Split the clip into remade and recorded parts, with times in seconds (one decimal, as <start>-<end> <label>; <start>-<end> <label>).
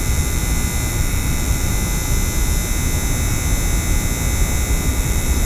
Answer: 0.0-0.4 remade; 0.4-0.9 recorded; 0.9-1.7 remade; 1.7-4.9 recorded; 4.9-5.4 remade